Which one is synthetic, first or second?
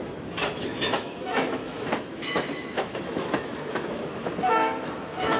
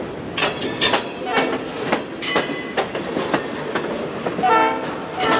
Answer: first